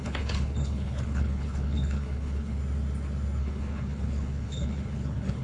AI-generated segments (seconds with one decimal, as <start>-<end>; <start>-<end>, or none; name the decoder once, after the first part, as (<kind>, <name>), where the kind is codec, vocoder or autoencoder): 0.0-2.6 (codec, HILCodec); 3.4-5.4